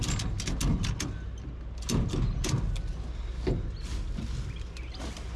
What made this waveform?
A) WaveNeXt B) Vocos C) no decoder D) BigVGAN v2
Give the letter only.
C